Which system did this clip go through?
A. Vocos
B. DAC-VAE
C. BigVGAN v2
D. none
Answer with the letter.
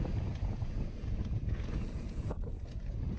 A